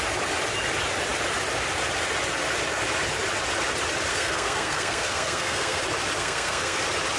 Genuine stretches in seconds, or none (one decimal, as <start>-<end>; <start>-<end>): 0.0-4.1; 5.8-6.2; 6.8-7.2